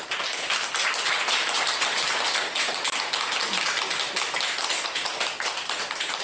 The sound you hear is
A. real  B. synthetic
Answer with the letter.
A